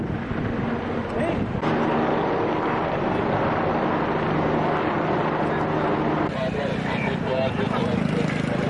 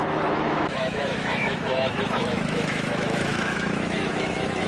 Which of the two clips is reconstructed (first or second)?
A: second